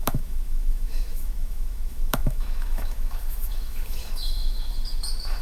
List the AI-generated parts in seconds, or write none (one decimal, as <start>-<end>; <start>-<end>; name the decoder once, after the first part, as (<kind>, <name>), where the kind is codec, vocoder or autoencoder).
0.0-5.4 (autoencoder, DAC-VAE)